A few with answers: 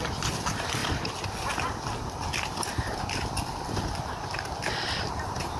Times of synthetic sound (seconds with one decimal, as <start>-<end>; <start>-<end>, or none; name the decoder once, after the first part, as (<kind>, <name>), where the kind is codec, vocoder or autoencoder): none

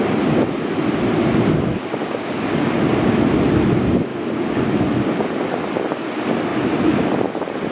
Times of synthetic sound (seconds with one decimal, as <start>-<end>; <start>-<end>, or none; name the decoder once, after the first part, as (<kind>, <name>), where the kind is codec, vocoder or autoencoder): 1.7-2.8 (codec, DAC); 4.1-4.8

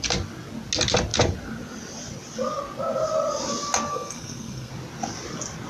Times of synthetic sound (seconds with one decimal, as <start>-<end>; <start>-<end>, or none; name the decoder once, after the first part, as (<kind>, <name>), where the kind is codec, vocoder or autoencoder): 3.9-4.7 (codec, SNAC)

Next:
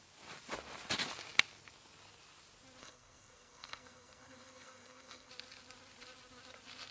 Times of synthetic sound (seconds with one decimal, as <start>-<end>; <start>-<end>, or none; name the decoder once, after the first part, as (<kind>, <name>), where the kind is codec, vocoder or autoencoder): 2.8-5.3 (codec, SNAC)

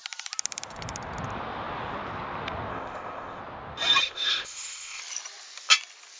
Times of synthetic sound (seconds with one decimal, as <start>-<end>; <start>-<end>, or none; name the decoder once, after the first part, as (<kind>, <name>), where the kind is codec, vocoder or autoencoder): 2.7-3.4 (codec, ZipCodec); 4.0-5.0

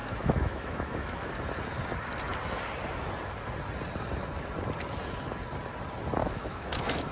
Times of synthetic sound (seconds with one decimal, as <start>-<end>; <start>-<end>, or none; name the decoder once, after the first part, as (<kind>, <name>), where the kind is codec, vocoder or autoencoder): 0.0-1.3 (autoencoder, DAC-VAE); 6.2-7.1

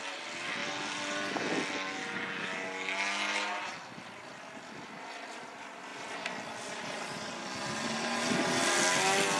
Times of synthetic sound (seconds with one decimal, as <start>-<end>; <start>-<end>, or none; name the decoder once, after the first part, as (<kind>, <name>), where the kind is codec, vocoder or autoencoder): 0.6-1.3 (vocoder, BigVGAN v2)